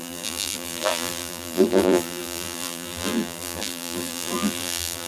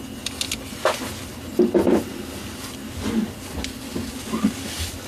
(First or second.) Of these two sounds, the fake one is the first